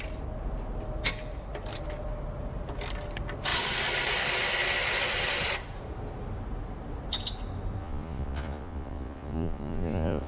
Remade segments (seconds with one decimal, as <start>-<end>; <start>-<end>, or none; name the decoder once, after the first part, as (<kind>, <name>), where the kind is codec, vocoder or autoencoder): 7.8-10.3 (vocoder, Vocos)